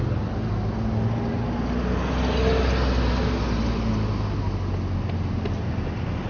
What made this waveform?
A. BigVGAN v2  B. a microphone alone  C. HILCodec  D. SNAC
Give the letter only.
B